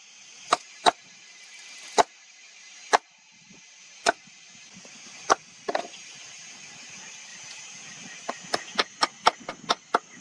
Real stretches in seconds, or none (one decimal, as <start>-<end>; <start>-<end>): 0.0-10.2